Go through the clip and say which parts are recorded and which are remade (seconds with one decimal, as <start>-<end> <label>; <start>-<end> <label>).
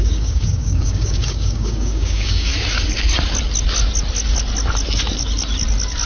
0.0-2.5 remade; 2.5-6.1 recorded